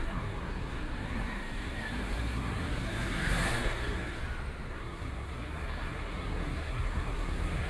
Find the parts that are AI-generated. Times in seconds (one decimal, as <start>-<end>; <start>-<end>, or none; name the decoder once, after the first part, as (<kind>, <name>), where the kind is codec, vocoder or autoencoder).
0.0-4.2 (codec, SNAC); 4.7-7.7